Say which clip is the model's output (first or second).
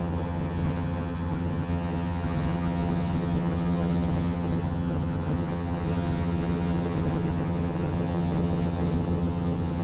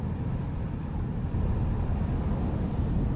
first